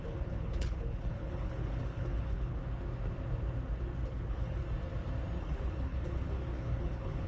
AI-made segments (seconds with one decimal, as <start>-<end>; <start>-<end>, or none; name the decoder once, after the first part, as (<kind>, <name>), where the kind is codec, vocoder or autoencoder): 0.0-2.6 (codec, HILCodec); 4.1-4.6; 5.4-7.3